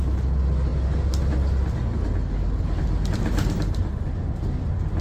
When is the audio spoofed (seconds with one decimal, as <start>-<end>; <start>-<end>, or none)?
3.8-4.4